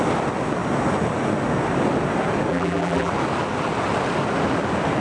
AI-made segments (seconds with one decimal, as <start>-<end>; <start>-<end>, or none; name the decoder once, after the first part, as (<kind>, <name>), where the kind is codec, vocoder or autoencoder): 2.5-3.1 (vocoder, BigVGAN v2)